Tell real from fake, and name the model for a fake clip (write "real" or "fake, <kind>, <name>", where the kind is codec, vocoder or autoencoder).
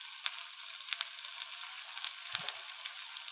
real